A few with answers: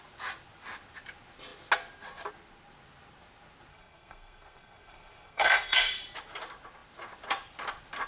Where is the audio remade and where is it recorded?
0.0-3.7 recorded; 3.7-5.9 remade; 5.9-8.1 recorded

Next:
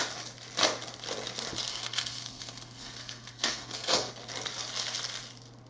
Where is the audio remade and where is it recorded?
0.0-1.7 recorded; 1.7-4.1 remade; 4.1-5.7 recorded

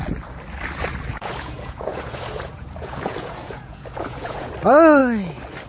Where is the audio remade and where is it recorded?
0.0-1.1 recorded; 1.1-4.5 remade; 4.5-5.7 recorded

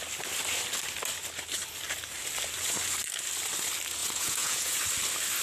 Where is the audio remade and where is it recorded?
0.0-4.0 recorded; 4.0-4.8 remade; 4.8-5.4 recorded